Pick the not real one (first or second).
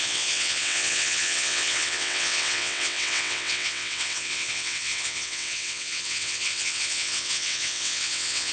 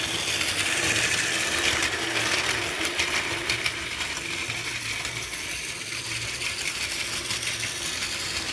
first